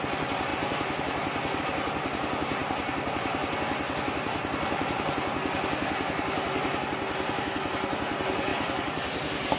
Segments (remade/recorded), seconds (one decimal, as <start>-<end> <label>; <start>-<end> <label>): 0.0-8.5 recorded; 8.5-9.6 remade